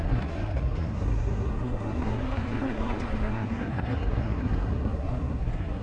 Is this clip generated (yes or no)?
yes